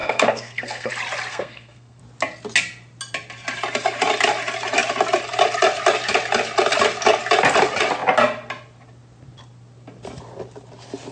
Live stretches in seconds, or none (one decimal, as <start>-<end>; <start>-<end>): 0.9-1.3; 2.0-11.1

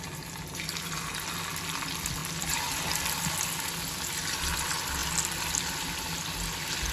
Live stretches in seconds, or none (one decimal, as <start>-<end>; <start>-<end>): 0.0-6.9

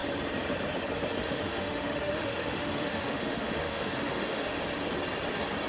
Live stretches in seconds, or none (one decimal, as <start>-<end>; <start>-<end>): 0.0-1.2; 4.6-5.7

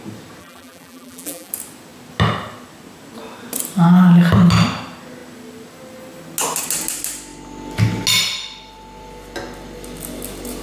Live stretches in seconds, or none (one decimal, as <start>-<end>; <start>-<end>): 0.0-0.4; 1.5-10.6